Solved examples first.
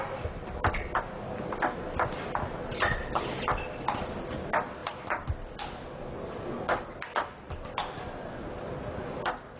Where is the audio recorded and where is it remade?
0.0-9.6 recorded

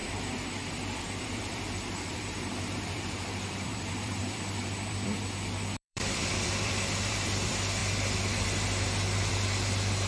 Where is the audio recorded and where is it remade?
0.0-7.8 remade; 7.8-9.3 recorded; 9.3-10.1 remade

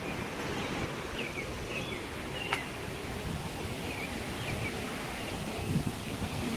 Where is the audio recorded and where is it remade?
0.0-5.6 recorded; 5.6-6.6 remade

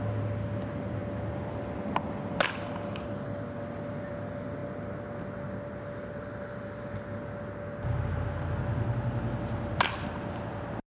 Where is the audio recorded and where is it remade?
0.0-10.9 recorded

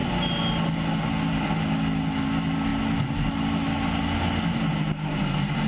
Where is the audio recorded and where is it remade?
0.0-5.7 recorded

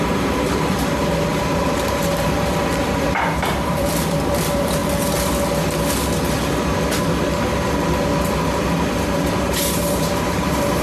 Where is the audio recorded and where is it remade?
0.0-4.8 remade; 4.8-9.3 recorded; 9.3-10.8 remade

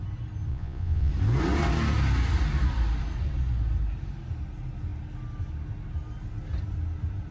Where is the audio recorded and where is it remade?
0.0-0.5 recorded; 0.5-1.1 remade; 1.1-7.3 recorded

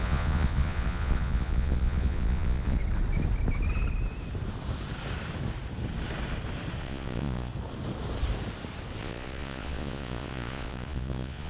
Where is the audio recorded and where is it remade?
0.0-2.8 remade; 2.8-6.8 recorded; 6.8-7.5 remade; 7.5-9.0 recorded; 9.0-11.5 remade